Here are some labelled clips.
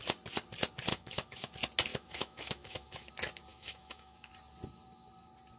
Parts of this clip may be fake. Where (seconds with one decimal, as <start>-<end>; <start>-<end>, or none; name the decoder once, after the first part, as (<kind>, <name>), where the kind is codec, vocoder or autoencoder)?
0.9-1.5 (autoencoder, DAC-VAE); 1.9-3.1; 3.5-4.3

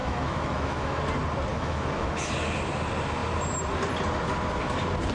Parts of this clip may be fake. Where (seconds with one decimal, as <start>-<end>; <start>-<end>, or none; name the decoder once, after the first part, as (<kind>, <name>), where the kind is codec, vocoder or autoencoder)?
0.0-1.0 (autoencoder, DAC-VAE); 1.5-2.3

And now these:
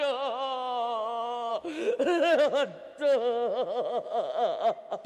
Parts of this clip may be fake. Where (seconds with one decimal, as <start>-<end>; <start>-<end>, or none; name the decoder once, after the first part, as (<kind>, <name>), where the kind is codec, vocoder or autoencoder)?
1.5-4.6 (autoencoder, DAC-VAE)